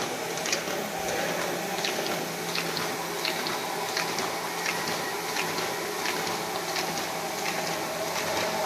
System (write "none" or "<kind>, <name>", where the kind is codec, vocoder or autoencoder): none